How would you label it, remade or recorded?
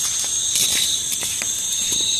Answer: remade